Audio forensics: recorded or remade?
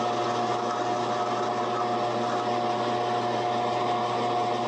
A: recorded